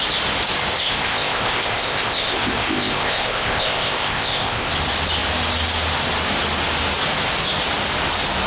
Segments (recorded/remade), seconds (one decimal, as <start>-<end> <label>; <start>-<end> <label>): 0.0-0.8 recorded; 0.8-4.7 remade; 4.7-8.5 recorded